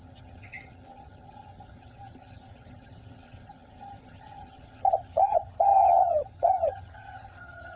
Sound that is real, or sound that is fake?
fake